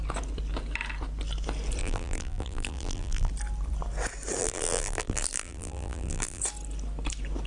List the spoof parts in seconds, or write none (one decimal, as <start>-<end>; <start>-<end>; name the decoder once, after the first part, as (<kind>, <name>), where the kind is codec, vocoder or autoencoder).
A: 1.8-3.3 (vocoder, BigVGAN v2); 4.4-6.4